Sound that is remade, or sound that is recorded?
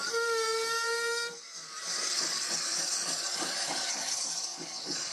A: remade